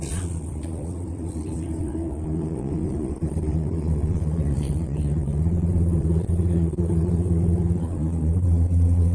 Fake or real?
fake